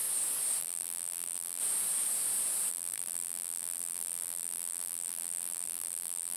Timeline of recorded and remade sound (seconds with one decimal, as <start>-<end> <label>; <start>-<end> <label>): 0.0-0.6 recorded; 0.6-1.6 remade; 1.6-2.7 recorded; 2.7-6.4 remade